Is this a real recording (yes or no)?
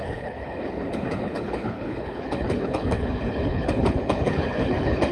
no